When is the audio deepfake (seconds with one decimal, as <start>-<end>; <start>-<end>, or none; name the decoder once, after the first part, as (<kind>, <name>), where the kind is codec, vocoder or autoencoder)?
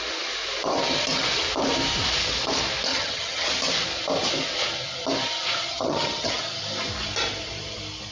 2.9-3.5 (vocoder, HiFi-GAN); 5.7-6.4